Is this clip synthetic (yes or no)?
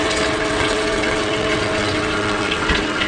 yes